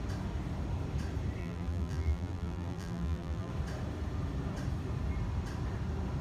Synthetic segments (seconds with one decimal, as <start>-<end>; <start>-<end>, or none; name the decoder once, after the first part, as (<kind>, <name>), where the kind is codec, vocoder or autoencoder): 1.4-3.5 (vocoder, BigVGAN v2)